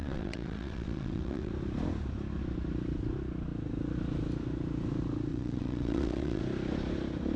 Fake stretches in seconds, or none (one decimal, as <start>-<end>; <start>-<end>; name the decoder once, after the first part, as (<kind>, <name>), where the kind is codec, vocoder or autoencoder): 0.0-1.5 (vocoder, WaveNeXt); 5.3-6.4